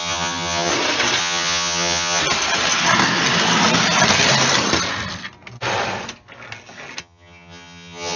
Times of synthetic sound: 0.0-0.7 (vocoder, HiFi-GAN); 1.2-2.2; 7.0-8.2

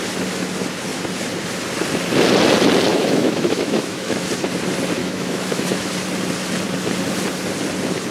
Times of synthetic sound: 2.9-4.3 (autoencoder, DAC-VAE); 5.0-5.9

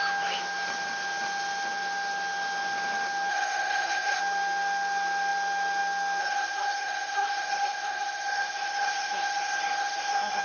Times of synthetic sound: 3.3-4.2 (codec, SNAC); 6.2-10.4

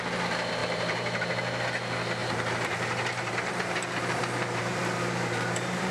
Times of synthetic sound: 0.6-1.3 (vocoder, BigVGAN v2); 2.2-5.9

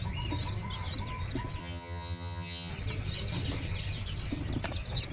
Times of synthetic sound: 1.6-2.7 (vocoder, HiFi-GAN)

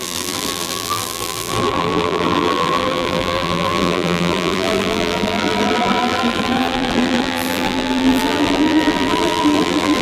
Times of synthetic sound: 0.0-10.0 (vocoder, BigVGAN v2)

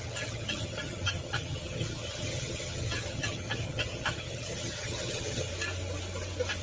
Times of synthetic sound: 0.0-5.5 (vocoder, HiFi-GAN)